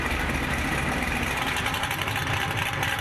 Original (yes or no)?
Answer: yes